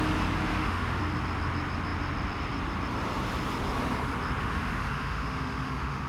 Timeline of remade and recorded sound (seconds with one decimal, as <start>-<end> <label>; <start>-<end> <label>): 0.0-0.5 recorded; 0.5-1.0 remade; 1.0-4.4 recorded; 4.4-6.1 remade

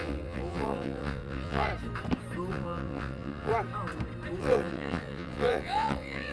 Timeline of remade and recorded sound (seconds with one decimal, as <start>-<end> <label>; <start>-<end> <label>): 0.0-1.7 remade; 1.7-2.5 recorded; 2.5-3.5 remade; 3.5-4.4 recorded; 4.4-6.3 remade

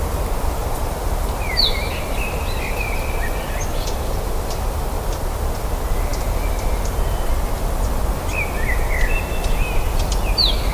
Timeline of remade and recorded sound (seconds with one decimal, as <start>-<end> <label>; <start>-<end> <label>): 0.0-0.6 recorded; 0.6-4.3 remade; 4.3-6.1 recorded; 6.1-6.9 remade; 6.9-10.7 recorded